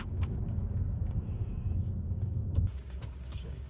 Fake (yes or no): yes